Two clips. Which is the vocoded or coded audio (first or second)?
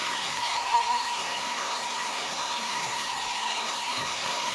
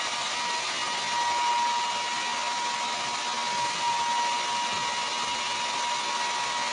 first